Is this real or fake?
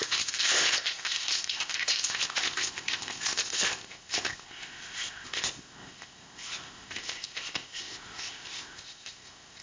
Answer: fake